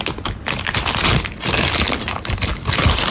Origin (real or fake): real